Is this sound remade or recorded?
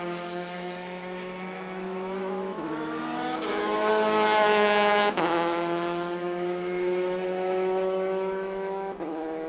remade